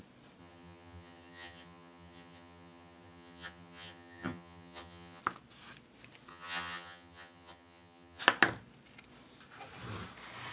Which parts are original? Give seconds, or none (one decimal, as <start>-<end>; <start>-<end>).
0.0-0.4; 5.2-6.3; 8.2-10.5